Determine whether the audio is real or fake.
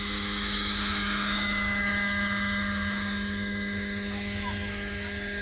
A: fake